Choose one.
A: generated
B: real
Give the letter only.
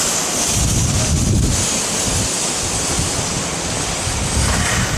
B